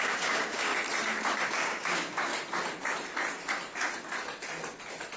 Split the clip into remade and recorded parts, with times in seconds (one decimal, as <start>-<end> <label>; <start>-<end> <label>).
0.0-0.7 remade; 0.7-1.5 recorded; 1.5-2.3 remade; 2.3-5.2 recorded